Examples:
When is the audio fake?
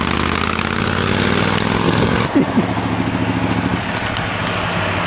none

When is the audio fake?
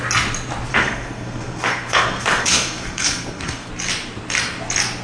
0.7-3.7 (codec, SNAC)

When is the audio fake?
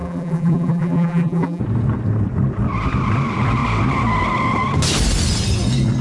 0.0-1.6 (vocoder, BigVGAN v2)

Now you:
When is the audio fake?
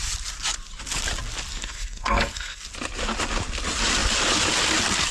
1.5-2.6 (codec, SNAC)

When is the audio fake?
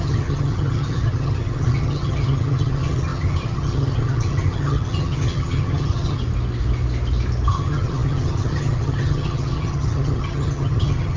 0.0-6.2 (vocoder, HiFi-GAN); 7.5-11.2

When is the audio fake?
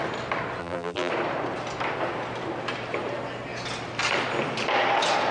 0.6-1.1 (vocoder, BigVGAN v2)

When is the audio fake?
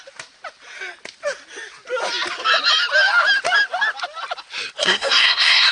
4.8-5.7 (codec, SNAC)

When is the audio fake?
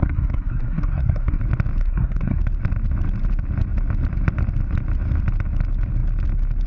0.0-1.4 (codec, SNAC); 1.8-2.4